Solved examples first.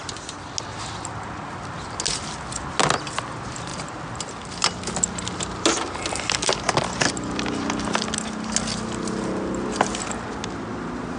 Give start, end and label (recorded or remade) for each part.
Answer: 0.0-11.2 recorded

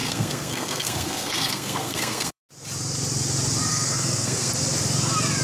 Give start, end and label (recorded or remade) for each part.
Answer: 0.0-2.4 remade; 2.4-3.7 recorded; 3.7-4.5 remade; 4.5-5.4 recorded

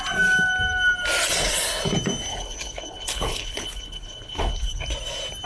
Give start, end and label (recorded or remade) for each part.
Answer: 0.0-2.3 recorded; 2.3-4.8 remade; 4.8-5.5 recorded

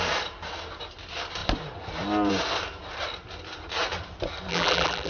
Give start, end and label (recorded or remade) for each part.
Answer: 0.0-4.5 recorded; 4.5-5.1 remade

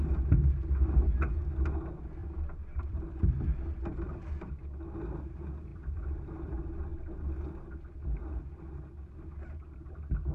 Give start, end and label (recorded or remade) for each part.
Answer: 0.0-2.2 recorded; 2.2-2.8 remade; 2.8-3.9 recorded; 3.9-4.5 remade; 4.5-5.7 recorded; 5.7-6.3 remade; 6.3-10.3 recorded

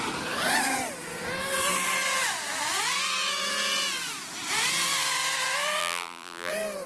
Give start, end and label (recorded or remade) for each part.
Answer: 0.0-5.8 recorded; 5.8-6.5 remade; 6.5-6.9 recorded

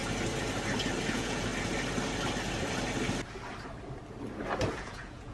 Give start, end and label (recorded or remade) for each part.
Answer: 0.0-1.1 recorded; 1.1-1.5 remade; 1.5-4.7 recorded; 4.7-5.3 remade

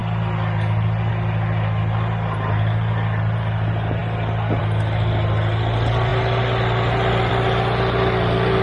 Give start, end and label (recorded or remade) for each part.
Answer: 0.0-8.6 recorded